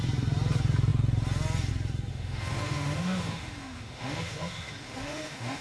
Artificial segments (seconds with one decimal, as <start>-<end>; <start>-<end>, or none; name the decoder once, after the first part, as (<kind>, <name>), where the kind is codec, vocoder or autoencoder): 2.1-5.6 (autoencoder, DAC-VAE)